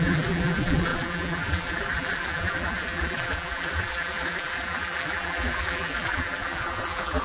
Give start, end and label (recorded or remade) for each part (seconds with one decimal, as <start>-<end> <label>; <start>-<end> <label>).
0.0-7.2 remade